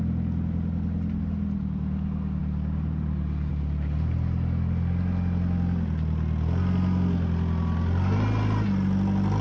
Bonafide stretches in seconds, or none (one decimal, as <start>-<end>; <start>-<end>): 0.0-9.4